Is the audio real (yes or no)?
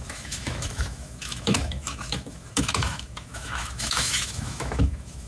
no